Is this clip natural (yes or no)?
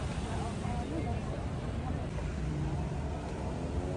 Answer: yes